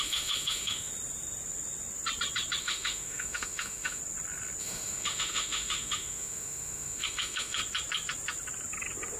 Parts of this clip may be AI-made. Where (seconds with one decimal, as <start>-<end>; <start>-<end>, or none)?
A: 0.0-0.9; 2.6-4.0; 4.6-7.6